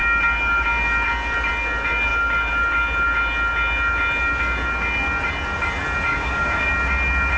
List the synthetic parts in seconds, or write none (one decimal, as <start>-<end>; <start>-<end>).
6.1-6.7